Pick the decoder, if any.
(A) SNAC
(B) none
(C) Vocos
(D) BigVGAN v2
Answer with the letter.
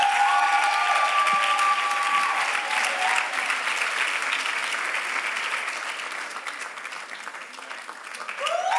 B